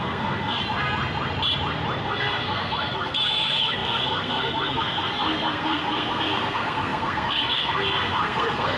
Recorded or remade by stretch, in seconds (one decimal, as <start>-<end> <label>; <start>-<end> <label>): 0.0-0.6 remade; 0.6-2.0 recorded; 2.0-8.8 remade